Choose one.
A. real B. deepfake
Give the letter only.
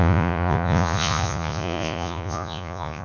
B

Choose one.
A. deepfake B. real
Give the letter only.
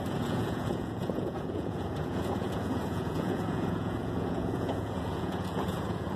A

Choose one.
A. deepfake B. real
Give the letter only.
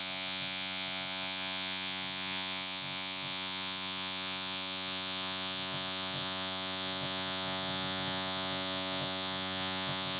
A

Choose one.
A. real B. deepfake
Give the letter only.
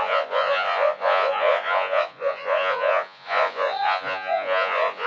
B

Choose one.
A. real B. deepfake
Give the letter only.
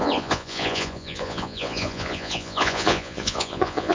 B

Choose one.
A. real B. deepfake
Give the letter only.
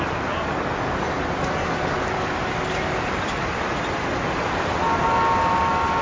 A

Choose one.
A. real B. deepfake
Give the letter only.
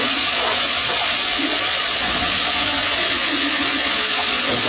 B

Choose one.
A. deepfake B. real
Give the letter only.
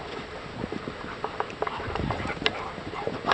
B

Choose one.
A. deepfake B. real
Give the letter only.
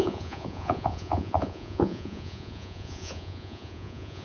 A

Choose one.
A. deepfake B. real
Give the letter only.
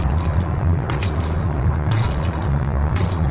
A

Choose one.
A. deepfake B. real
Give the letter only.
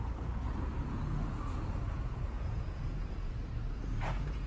A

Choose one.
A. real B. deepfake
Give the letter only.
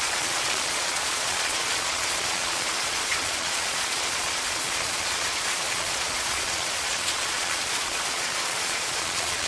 B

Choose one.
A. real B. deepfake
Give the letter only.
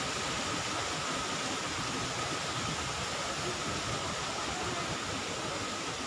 A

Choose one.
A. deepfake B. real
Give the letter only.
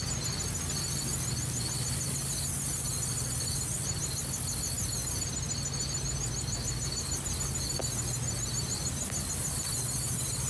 B